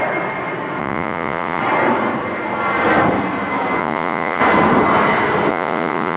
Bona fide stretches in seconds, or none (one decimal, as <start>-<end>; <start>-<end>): 0.0-0.8; 1.6-3.8; 4.4-5.5